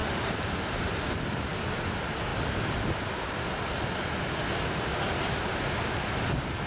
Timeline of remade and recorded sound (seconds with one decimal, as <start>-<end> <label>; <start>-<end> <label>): 0.0-1.1 remade; 1.1-2.3 recorded; 2.3-3.9 remade; 3.9-6.7 recorded